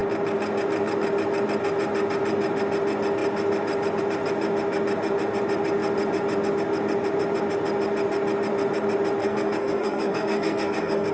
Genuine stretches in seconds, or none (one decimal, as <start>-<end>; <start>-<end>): 0.0-9.2